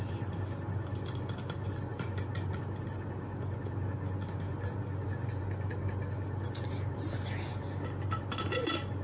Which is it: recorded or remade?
recorded